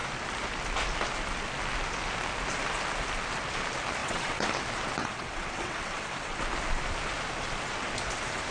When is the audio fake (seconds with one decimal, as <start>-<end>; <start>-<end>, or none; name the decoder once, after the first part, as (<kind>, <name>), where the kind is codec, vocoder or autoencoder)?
4.0-4.5 (vocoder, WaveNeXt); 5.0-6.4